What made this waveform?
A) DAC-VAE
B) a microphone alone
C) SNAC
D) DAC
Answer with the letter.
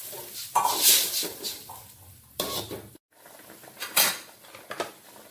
B